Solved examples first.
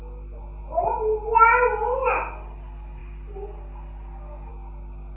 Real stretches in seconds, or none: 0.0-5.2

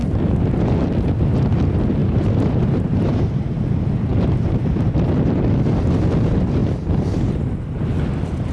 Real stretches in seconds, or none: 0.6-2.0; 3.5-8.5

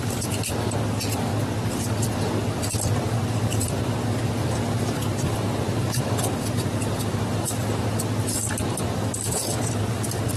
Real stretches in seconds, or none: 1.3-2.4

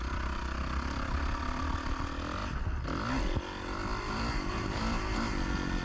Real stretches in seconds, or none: 0.0-3.9; 5.0-5.8